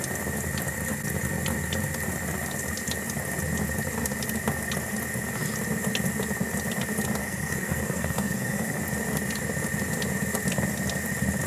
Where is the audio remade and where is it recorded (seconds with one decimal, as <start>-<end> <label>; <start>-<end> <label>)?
0.0-7.2 recorded; 7.2-8.8 remade; 8.8-11.5 recorded